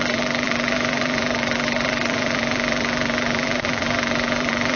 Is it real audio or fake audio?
fake